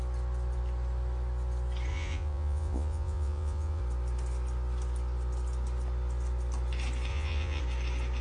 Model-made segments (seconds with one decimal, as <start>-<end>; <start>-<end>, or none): 1.9-3.8; 7.1-7.6